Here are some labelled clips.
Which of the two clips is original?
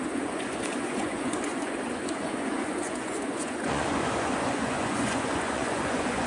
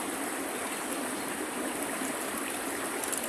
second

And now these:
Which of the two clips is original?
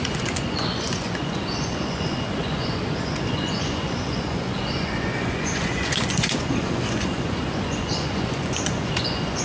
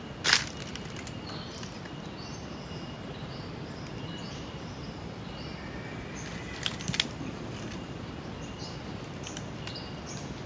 second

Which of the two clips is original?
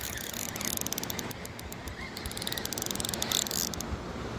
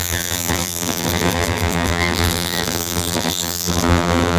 first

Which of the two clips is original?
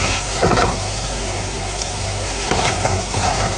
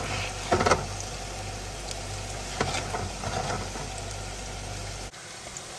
second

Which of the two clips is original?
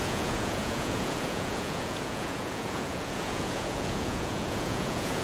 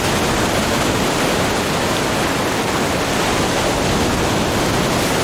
second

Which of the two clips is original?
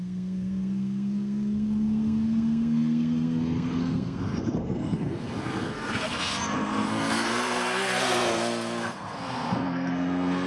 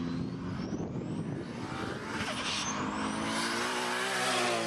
second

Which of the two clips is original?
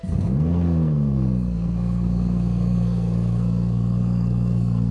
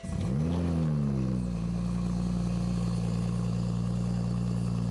second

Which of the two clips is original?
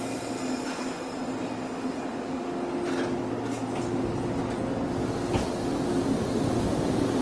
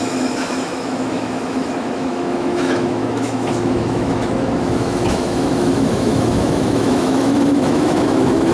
first